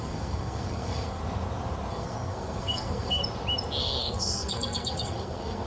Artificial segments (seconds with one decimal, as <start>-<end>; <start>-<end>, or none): 0.0-1.2; 1.9-3.2; 3.8-5.7